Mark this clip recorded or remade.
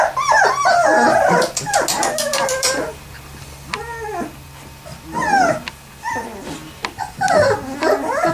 recorded